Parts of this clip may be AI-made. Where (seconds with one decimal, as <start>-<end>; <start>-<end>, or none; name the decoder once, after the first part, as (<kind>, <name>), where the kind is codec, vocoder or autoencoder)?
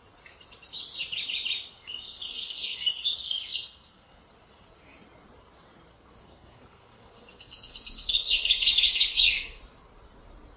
1.7-4.2 (codec, SNAC); 5.9-9.6